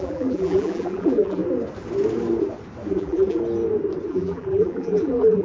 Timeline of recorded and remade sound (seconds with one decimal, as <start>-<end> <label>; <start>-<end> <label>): 0.0-1.4 remade; 1.4-2.9 recorded; 2.9-3.4 remade; 3.4-4.1 recorded; 4.1-5.4 remade